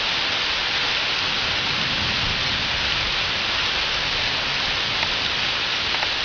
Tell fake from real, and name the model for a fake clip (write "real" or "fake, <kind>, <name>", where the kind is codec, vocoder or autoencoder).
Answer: real